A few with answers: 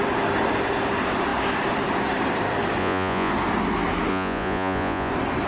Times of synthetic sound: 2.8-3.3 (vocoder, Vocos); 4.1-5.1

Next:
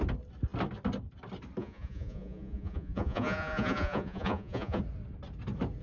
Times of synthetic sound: 1.6-4.8 (vocoder, Vocos)

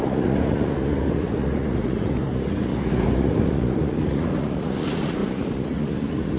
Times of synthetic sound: 0.0-6.4 (vocoder, Vocos)

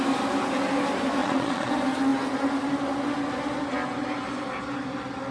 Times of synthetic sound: 1.2-1.7 (vocoder, Vocos)

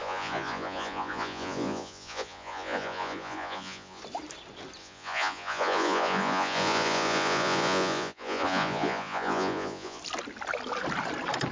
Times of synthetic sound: 0.0-4.0 (vocoder, Vocos); 4.8-10.0

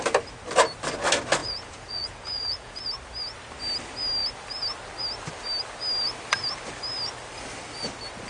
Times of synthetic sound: 1.4-2.8 (vocoder, Vocos)

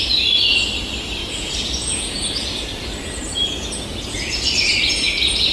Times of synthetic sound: 1.2-4.5 (vocoder, Vocos)